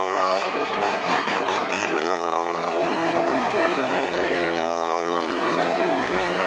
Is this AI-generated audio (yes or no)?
yes